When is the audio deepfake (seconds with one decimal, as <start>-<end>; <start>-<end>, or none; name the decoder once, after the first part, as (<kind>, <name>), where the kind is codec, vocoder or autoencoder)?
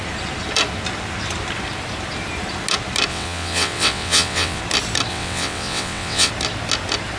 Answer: 3.1-4.6 (vocoder, WaveNeXt); 5.1-6.3